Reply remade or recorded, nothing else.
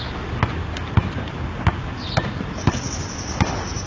recorded